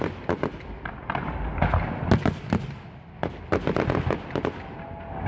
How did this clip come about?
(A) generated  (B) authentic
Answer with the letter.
B